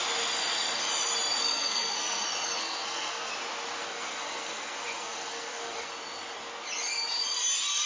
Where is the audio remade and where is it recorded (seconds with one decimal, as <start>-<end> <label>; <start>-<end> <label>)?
0.0-1.4 recorded; 1.4-2.2 remade; 2.2-2.6 recorded; 2.6-3.3 remade; 3.3-3.8 recorded; 3.8-5.9 remade; 5.9-7.9 recorded